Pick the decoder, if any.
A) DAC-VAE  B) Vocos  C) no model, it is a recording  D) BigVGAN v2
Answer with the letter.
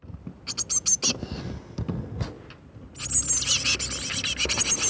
C